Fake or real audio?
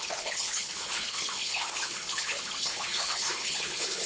fake